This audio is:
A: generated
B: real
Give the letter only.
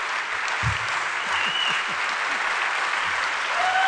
B